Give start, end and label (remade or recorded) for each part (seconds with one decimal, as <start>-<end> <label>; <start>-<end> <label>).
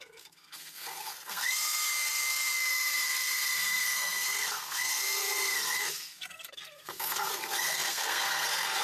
0.0-8.8 remade